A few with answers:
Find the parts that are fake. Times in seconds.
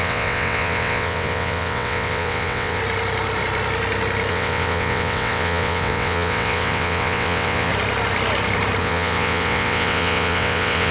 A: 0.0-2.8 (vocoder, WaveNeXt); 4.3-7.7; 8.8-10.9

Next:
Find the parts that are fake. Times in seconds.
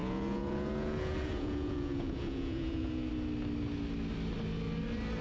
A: 0.0-3.1 (vocoder, Vocos)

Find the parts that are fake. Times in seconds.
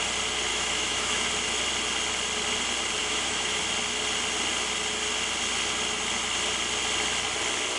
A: 0.5-1.3 (autoencoder, DAC-VAE); 3.0-3.6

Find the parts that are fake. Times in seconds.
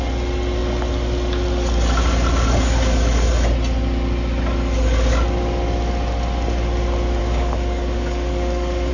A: 7.2-8.9 (codec, DAC)